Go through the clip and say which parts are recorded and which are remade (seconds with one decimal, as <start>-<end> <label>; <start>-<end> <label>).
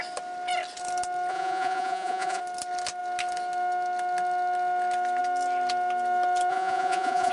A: 0.0-1.3 recorded; 1.3-2.4 remade; 2.4-6.5 recorded; 6.5-7.3 remade